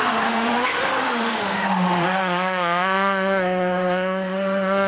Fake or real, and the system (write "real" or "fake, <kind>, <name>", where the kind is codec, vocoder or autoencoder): fake, autoencoder, DAC-VAE